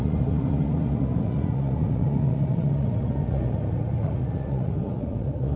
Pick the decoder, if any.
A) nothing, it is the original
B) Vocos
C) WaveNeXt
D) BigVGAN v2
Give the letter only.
B